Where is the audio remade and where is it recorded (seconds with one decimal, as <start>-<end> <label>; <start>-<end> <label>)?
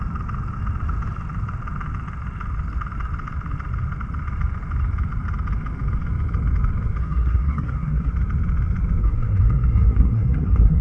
0.0-7.0 recorded; 7.0-8.1 remade; 8.1-9.0 recorded; 9.0-10.8 remade